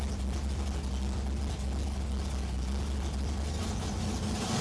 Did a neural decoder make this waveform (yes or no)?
no